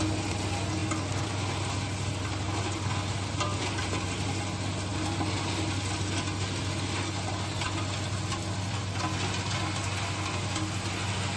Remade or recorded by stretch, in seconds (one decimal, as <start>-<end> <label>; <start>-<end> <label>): 0.0-11.4 recorded

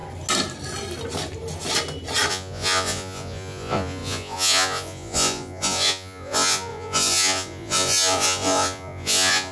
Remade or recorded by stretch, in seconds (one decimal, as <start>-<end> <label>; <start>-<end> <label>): 0.0-2.3 recorded; 2.3-9.5 remade

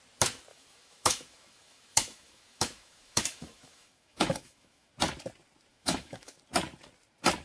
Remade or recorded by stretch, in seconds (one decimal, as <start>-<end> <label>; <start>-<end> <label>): 0.0-0.5 recorded; 0.5-4.9 remade; 4.9-5.7 recorded; 5.7-6.4 remade; 6.4-7.4 recorded